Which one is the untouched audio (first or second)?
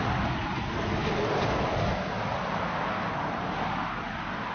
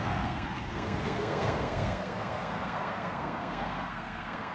first